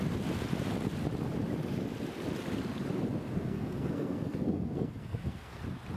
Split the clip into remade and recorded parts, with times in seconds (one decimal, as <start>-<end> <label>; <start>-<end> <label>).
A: 0.0-3.1 recorded; 3.1-5.6 remade; 5.6-6.0 recorded